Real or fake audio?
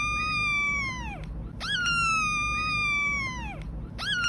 real